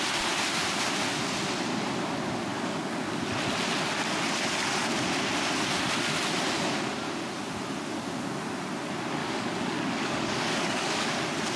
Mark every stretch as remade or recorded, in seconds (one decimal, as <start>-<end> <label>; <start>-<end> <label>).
0.0-2.5 recorded; 2.5-3.2 remade; 3.2-9.2 recorded; 9.2-11.1 remade; 11.1-11.6 recorded

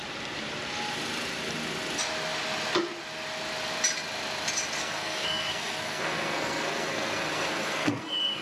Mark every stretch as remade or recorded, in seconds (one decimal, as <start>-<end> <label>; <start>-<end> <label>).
0.0-4.8 recorded; 4.8-8.4 remade

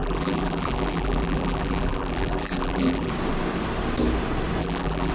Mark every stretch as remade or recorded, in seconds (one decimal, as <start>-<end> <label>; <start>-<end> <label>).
0.0-3.1 remade; 3.1-4.6 recorded; 4.6-5.1 remade

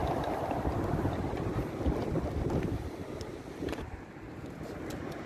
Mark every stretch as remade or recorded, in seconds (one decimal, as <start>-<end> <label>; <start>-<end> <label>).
0.0-3.2 remade; 3.2-5.3 recorded

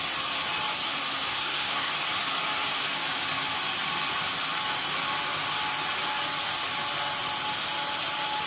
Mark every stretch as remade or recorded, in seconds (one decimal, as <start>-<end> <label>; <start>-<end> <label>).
0.0-1.3 recorded; 1.3-1.9 remade; 1.9-8.5 recorded

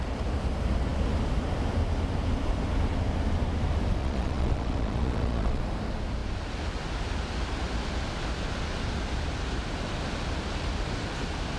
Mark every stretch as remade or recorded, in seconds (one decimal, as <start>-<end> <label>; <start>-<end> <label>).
0.0-4.0 recorded; 4.0-5.6 remade; 5.6-11.6 recorded